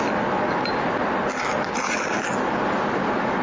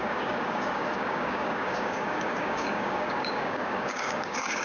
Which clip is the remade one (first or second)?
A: second